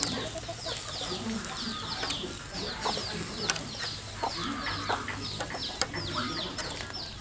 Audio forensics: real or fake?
real